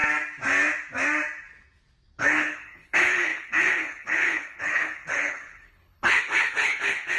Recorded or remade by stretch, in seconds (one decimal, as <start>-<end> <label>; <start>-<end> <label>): 0.0-2.2 recorded; 2.2-7.2 remade